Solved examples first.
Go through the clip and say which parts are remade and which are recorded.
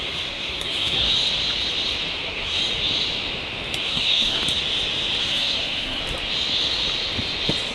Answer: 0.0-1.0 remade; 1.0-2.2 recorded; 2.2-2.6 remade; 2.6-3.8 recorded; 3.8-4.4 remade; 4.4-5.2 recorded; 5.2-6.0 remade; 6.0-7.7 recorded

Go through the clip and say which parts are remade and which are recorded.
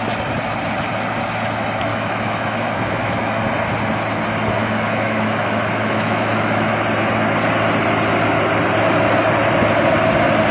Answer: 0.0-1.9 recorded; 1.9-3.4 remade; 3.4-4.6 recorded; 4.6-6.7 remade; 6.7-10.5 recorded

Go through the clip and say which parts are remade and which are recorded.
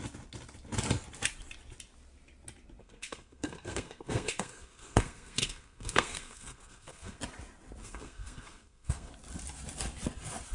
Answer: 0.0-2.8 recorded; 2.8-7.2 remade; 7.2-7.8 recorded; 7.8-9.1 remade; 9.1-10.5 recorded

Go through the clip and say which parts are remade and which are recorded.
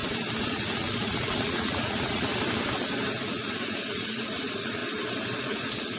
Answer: 0.0-0.5 recorded; 0.5-2.3 remade; 2.3-3.2 recorded; 3.2-4.8 remade; 4.8-5.4 recorded; 5.4-6.0 remade